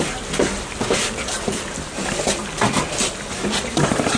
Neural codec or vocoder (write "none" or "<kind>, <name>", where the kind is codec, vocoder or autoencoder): vocoder, BigVGAN v2